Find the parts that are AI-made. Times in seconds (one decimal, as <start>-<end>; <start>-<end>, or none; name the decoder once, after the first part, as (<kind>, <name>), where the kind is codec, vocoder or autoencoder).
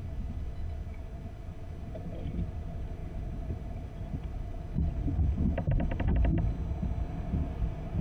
none